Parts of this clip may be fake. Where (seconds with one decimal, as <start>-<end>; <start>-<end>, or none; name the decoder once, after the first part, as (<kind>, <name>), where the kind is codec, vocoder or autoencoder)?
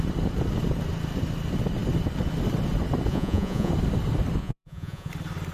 3.1-3.7 (vocoder, Vocos); 4.4-5.1